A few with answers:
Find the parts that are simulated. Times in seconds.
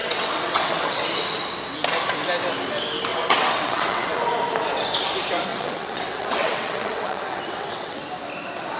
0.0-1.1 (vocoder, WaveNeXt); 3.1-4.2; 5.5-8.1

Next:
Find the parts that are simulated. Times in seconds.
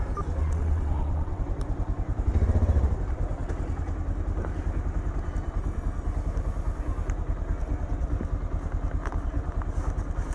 0.4-1.4 (vocoder, WaveNeXt)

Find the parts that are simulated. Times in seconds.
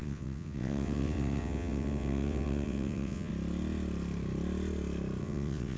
0.0-3.3 (vocoder, WaveNeXt); 5.2-5.8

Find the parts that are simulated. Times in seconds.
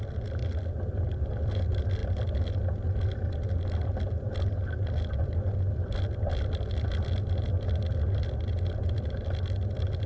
none